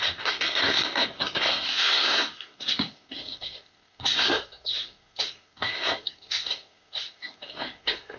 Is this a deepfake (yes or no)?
yes